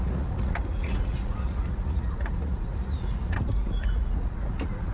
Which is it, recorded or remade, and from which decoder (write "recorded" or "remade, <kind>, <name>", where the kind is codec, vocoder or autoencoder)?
remade, vocoder, Vocos